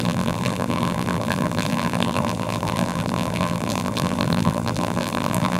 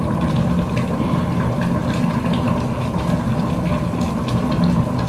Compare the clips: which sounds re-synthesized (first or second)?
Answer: first